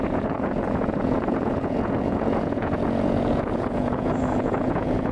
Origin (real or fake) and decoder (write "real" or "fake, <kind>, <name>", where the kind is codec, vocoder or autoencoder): fake, vocoder, Vocos